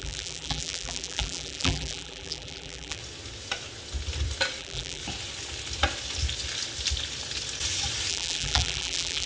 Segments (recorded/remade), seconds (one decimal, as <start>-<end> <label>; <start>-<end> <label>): 0.0-3.0 remade; 3.0-4.6 recorded; 4.6-5.0 remade; 5.0-8.1 recorded; 8.1-9.3 remade